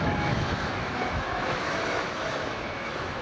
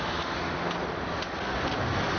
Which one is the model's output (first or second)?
first